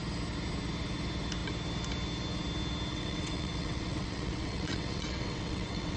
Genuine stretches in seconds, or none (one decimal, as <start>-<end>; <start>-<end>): 0.0-2.9